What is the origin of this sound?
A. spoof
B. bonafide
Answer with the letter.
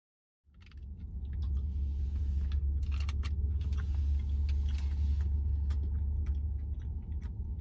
B